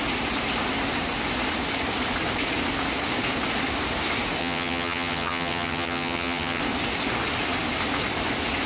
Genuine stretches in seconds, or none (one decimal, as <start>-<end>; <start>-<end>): 0.0-4.4; 6.6-8.7